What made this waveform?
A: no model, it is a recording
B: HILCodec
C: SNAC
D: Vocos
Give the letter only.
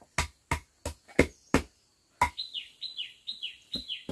A